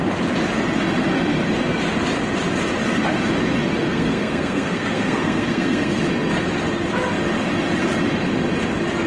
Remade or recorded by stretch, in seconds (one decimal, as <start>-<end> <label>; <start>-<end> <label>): 0.0-3.8 recorded; 3.8-6.0 remade; 6.0-9.1 recorded